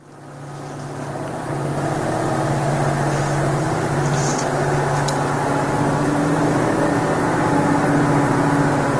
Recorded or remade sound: recorded